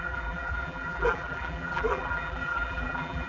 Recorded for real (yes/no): no